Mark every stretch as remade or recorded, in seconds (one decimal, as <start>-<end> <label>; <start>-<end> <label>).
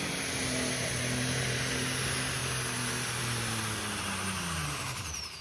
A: 0.0-4.6 recorded; 4.6-5.4 remade